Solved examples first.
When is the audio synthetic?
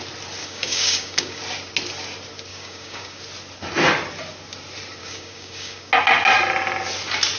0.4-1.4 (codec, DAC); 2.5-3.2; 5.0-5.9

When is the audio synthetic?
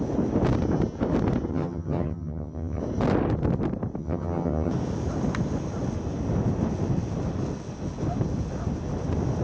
1.5-2.8 (vocoder, HiFi-GAN); 4.0-4.7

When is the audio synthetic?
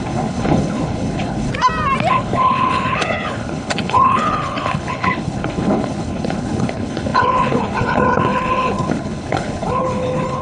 0.0-1.5 (codec, HILCodec); 2.1-10.4